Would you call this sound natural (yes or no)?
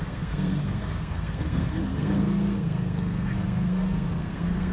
no